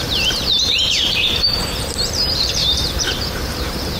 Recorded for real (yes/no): no